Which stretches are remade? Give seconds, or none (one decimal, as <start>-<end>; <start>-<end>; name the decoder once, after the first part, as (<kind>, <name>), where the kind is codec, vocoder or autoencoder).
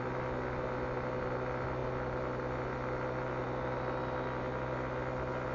none